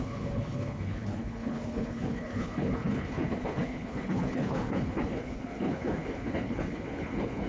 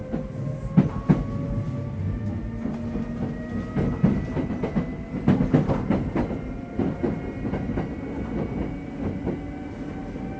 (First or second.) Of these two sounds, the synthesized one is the first